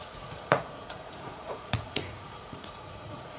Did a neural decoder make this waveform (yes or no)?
yes